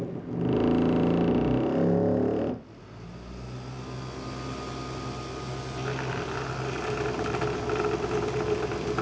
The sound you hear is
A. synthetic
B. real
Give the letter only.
B